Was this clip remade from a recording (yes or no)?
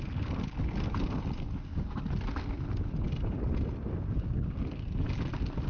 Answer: no